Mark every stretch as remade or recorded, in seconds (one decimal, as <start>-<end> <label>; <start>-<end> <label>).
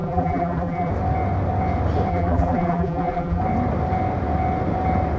0.0-0.9 remade; 0.9-2.1 recorded; 2.1-3.4 remade; 3.4-5.2 recorded